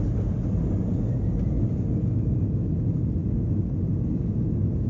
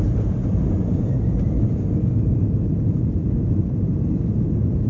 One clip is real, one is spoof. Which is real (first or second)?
first